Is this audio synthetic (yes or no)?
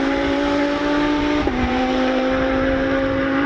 yes